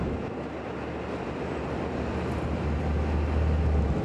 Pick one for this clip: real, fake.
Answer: real